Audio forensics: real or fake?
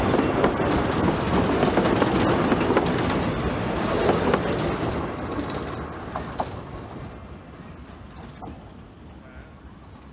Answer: real